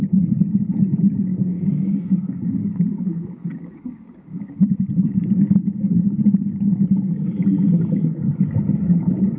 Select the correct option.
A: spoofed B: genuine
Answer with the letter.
A